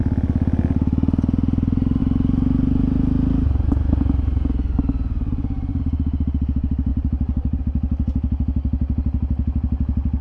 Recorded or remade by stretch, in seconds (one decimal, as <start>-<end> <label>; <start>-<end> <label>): 0.0-6.9 recorded; 6.9-7.6 remade; 7.6-10.2 recorded